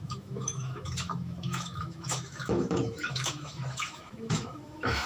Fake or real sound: fake